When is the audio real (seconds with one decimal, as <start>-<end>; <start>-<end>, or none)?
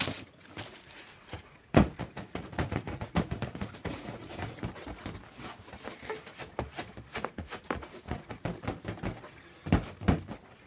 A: 0.0-0.7; 4.6-7.1; 8.3-10.7